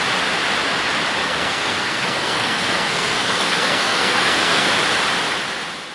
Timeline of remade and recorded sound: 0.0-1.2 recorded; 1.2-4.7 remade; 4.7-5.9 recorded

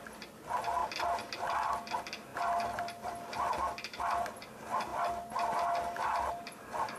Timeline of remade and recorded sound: 0.0-7.0 recorded

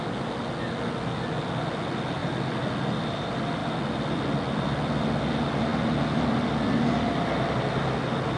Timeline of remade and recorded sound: 0.0-8.4 recorded

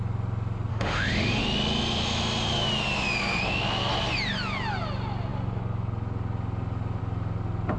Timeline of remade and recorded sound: 0.0-0.7 recorded; 0.7-1.4 remade; 1.4-7.8 recorded

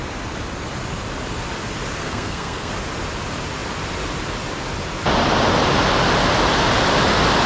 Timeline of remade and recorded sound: 0.0-2.0 recorded; 2.0-2.7 remade; 2.7-7.5 recorded

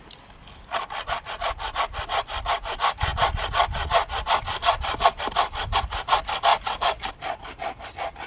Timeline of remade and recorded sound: 0.0-6.5 recorded; 6.5-7.1 remade; 7.1-8.3 recorded